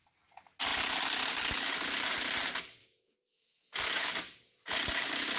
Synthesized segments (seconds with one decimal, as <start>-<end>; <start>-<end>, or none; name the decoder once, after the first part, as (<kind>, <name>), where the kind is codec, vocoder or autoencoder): 2.8-4.1 (autoencoder, DAC-VAE)